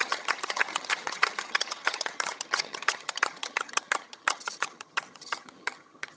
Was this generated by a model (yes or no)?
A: yes